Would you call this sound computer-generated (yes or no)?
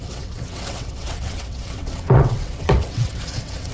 yes